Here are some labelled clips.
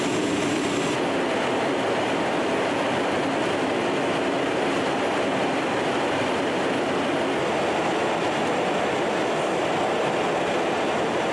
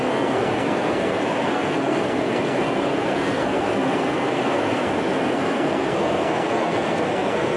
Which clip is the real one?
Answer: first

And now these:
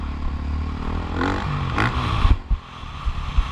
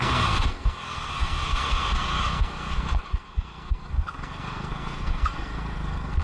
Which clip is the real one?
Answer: first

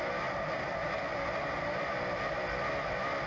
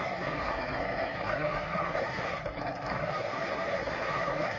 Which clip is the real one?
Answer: first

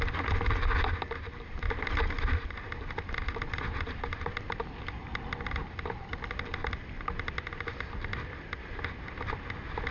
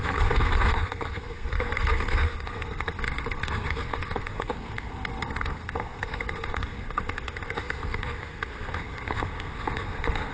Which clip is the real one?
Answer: first